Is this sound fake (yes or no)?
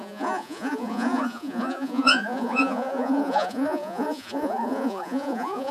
yes